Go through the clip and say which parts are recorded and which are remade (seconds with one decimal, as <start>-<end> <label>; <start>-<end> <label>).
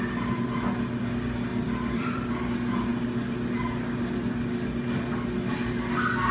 0.0-1.5 recorded; 1.5-2.4 remade; 2.4-6.3 recorded